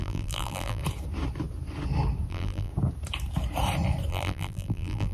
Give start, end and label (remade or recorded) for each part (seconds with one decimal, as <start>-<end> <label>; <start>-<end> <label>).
0.0-0.8 remade; 0.8-2.3 recorded; 2.3-2.7 remade; 2.7-4.1 recorded; 4.1-5.1 remade